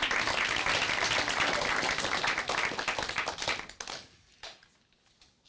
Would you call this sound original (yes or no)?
yes